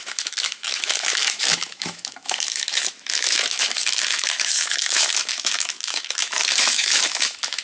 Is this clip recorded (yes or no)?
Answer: no